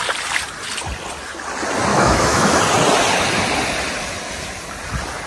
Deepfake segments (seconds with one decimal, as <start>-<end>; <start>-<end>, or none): 1.9-2.6